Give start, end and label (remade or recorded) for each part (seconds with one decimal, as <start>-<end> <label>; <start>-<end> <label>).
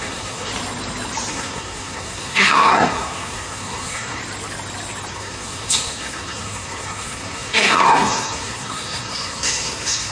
0.0-0.5 remade; 0.5-1.3 recorded; 1.3-4.2 remade; 4.2-5.1 recorded; 5.1-10.1 remade